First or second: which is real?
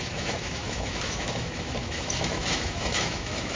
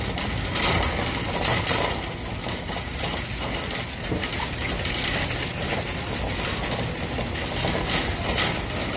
second